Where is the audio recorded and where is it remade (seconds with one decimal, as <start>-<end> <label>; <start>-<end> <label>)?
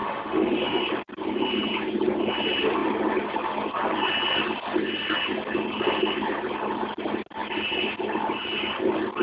0.0-0.8 remade; 0.8-9.2 recorded